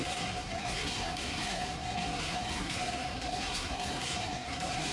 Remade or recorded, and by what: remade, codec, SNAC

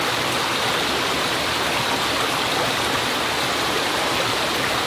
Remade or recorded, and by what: recorded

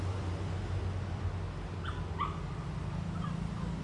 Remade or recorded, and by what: recorded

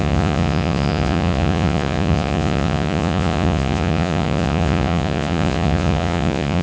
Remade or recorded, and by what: remade, vocoder, Vocos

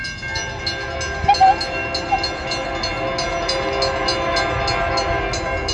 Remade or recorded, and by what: recorded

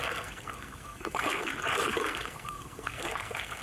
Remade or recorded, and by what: remade, codec, SNAC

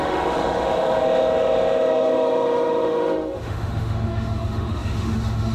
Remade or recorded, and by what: remade, autoencoder, DAC-VAE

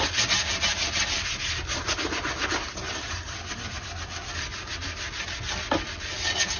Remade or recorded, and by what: recorded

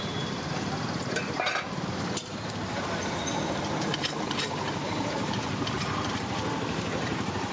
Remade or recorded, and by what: remade, vocoder, BigVGAN v2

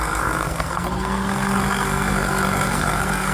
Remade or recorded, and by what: remade, codec, SNAC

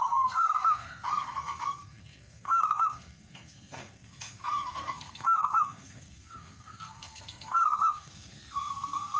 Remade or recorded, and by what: remade, codec, SNAC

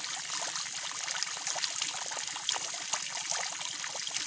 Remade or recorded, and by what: recorded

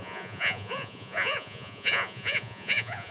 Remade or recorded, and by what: remade, vocoder, Vocos